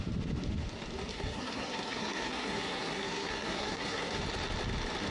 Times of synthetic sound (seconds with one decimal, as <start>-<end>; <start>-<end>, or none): 1.1-4.2